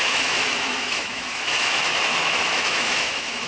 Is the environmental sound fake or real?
fake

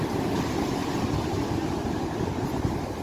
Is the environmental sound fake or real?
real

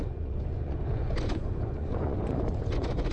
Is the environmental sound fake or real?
fake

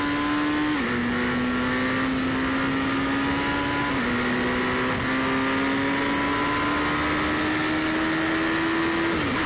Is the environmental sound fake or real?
real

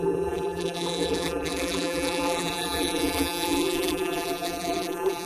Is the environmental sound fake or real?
fake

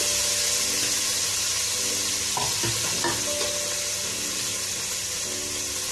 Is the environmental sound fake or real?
real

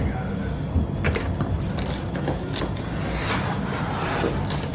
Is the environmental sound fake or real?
real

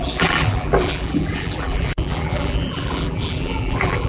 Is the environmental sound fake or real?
fake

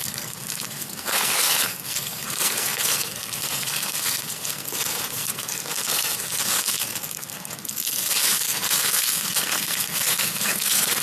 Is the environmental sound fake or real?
fake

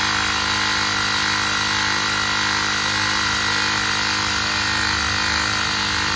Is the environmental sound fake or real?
real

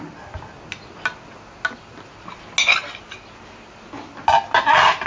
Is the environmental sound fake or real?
real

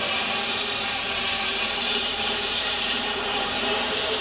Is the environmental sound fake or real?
fake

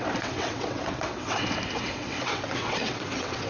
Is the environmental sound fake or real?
fake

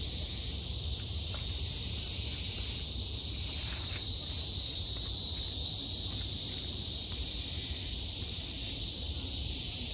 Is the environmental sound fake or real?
fake